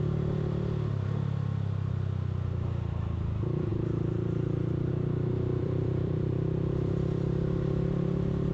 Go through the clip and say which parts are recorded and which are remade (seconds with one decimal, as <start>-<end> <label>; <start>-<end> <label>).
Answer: 0.0-5.5 recorded; 5.5-6.3 remade; 6.3-8.5 recorded